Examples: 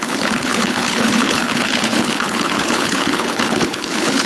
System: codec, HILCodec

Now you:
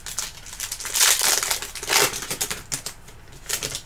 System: none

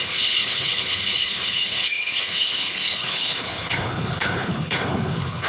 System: codec, HILCodec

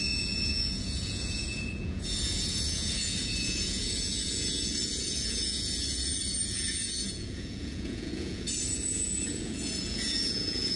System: vocoder, Vocos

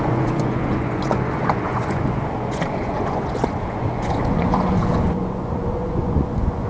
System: vocoder, Vocos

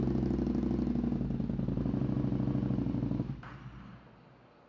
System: none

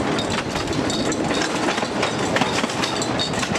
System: none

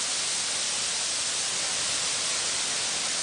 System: none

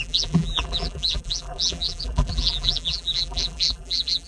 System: vocoder, BigVGAN v2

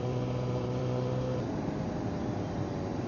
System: vocoder, BigVGAN v2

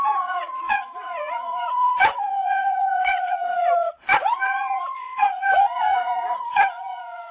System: vocoder, Vocos